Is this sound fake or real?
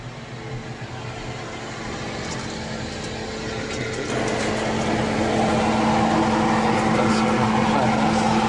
real